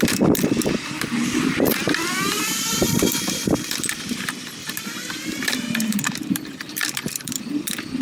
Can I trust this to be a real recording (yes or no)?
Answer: no